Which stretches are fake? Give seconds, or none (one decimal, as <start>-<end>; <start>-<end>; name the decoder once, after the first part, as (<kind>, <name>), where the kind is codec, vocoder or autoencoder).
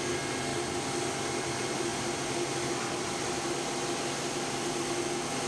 none